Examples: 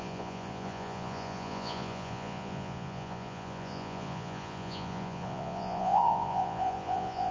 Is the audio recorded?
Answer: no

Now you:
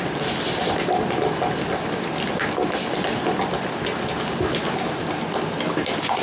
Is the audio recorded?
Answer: yes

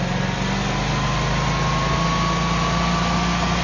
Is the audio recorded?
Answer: yes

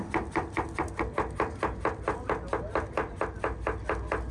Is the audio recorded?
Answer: yes